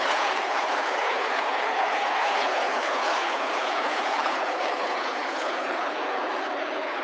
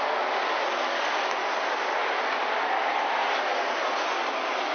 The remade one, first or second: first